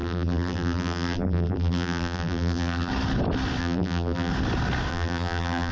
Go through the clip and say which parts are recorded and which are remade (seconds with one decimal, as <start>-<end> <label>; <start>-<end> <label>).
0.0-2.9 remade; 2.9-3.6 recorded; 3.6-4.3 remade; 4.3-4.9 recorded; 4.9-5.7 remade